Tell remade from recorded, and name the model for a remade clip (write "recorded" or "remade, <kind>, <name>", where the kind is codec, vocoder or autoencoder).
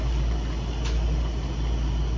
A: recorded